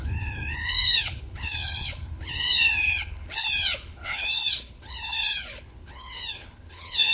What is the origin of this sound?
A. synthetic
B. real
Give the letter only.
A